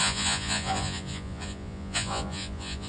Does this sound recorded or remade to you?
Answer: remade